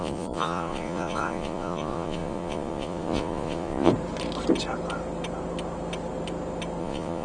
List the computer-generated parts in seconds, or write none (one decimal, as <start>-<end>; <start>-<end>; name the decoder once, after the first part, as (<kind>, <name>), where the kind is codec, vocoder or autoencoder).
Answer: 0.0-3.9 (vocoder, Vocos); 6.8-7.2